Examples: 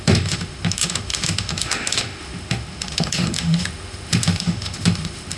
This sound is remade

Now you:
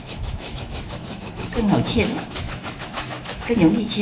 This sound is remade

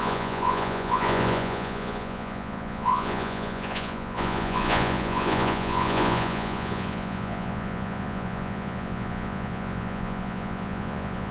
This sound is remade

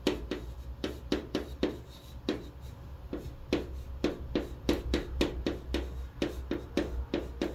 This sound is recorded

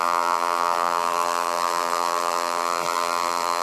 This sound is remade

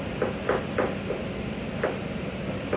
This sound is recorded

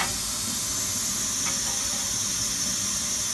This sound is recorded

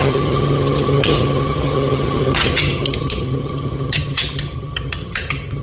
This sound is remade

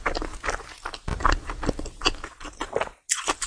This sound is recorded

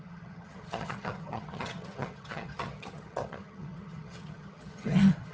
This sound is remade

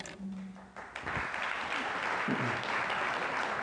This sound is recorded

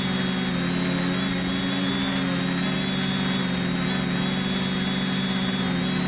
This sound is recorded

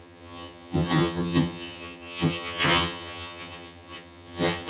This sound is remade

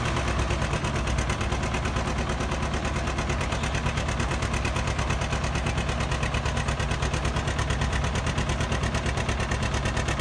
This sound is recorded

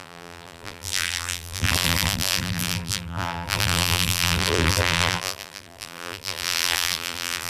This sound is remade